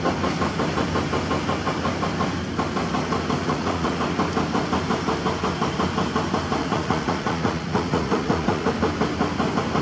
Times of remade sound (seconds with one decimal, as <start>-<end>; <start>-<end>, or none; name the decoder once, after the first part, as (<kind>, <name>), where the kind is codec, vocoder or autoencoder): 3.4-4.0 (vocoder, Vocos); 6.6-8.7